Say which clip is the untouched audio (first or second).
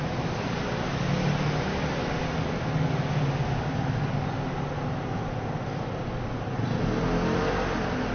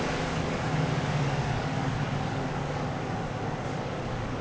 first